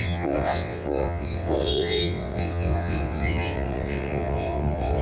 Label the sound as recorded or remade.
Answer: remade